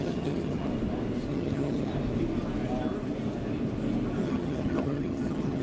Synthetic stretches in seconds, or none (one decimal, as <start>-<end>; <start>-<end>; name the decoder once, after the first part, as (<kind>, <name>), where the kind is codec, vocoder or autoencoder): 0.0-0.7 (vocoder, HiFi-GAN); 1.3-1.9; 4.2-5.6